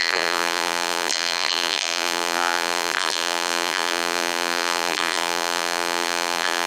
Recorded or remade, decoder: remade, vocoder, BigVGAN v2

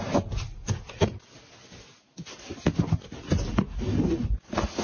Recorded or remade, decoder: recorded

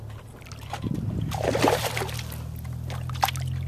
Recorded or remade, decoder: recorded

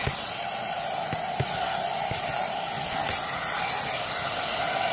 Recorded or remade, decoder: recorded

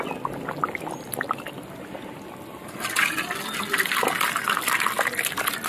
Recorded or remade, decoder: recorded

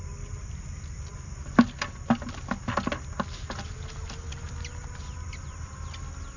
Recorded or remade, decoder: recorded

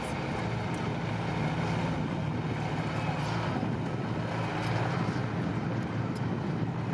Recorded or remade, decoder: recorded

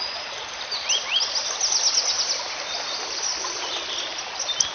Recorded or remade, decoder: recorded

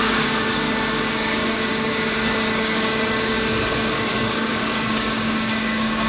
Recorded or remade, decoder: remade, codec, DAC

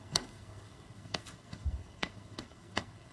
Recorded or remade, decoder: remade, codec, SNAC